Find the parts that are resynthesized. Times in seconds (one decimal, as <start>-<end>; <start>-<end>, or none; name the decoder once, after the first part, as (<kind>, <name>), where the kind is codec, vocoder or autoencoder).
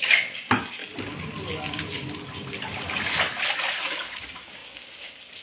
0.0-0.8 (codec, DAC); 3.7-5.4